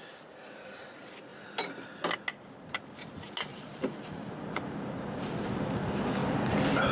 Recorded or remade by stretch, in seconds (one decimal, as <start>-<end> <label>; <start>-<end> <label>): 0.0-3.5 recorded; 3.5-4.3 remade; 4.3-6.9 recorded